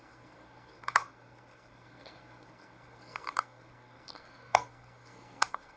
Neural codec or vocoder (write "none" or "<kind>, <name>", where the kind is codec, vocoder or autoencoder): codec, SNAC